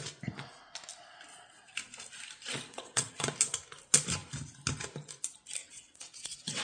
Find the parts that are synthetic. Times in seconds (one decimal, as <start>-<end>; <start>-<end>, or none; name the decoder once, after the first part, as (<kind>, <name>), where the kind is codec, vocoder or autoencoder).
2.7-3.3 (vocoder, WaveNeXt); 5.6-6.6